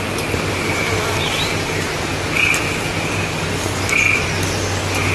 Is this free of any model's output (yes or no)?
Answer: yes